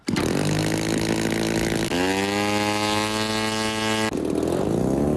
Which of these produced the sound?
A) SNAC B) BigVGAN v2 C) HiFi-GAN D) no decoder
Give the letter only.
D